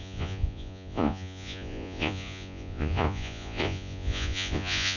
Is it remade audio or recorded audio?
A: remade